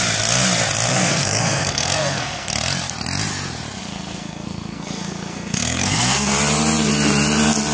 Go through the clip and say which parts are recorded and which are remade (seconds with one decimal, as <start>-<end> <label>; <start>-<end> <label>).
0.0-0.9 recorded; 0.9-2.5 remade; 2.5-3.8 recorded; 3.8-6.3 remade; 6.3-7.7 recorded

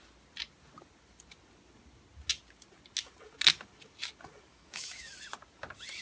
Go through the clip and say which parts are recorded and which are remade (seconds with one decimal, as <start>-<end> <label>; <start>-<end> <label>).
0.0-4.5 recorded; 4.5-5.1 remade; 5.1-6.0 recorded

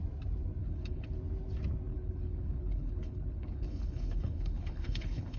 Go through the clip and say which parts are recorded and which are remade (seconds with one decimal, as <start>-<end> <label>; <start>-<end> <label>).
0.0-0.6 recorded; 0.6-1.2 remade; 1.2-1.9 recorded; 1.9-5.4 remade

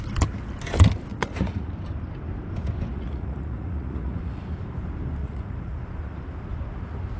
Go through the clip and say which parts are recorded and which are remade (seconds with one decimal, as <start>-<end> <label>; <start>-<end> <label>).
0.0-1.1 recorded; 1.1-1.7 remade; 1.7-2.9 recorded; 2.9-4.4 remade; 4.4-5.2 recorded; 5.2-5.8 remade; 5.8-7.2 recorded